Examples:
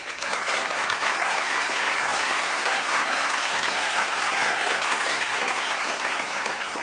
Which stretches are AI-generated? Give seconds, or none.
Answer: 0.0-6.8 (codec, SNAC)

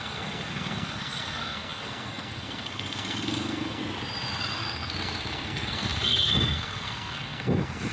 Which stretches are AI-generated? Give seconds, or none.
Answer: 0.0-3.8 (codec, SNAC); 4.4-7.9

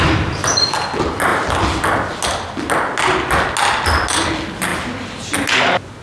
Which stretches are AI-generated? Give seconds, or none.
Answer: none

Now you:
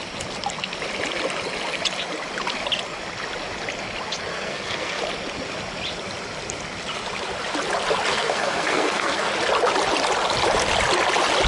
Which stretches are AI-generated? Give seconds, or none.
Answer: 4.3-5.0 (codec, SNAC); 8.1-9.3

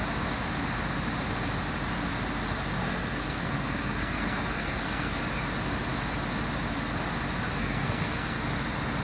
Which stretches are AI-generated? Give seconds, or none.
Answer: 2.8-5.2 (codec, SNAC); 7.6-8.4

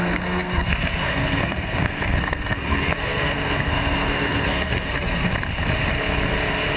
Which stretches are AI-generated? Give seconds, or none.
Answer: 0.0-5.3 (codec, SNAC)

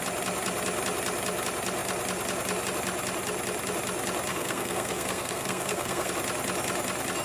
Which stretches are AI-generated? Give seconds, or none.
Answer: 4.3-6.1 (codec, SNAC)